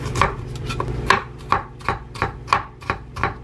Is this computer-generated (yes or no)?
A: no